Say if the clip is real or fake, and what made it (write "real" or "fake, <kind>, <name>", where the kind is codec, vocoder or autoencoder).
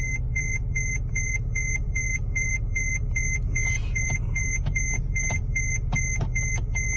fake, vocoder, Vocos